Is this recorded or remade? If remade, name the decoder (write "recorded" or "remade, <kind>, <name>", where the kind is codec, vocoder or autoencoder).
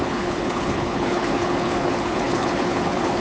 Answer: remade, codec, HILCodec